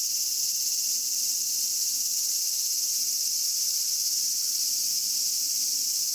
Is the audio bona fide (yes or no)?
no